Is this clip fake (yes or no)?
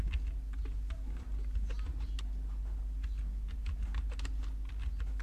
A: no